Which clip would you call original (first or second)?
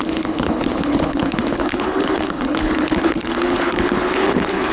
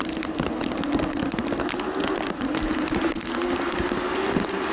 second